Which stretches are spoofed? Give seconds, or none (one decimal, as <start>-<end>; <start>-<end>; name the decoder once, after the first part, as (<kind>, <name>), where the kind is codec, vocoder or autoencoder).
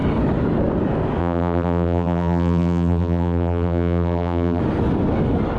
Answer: 1.2-4.6 (vocoder, BigVGAN v2)